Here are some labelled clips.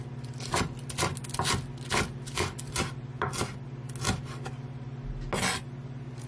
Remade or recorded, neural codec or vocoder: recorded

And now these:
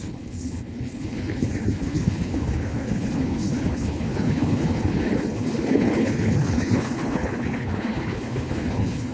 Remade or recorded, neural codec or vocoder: remade, codec, HILCodec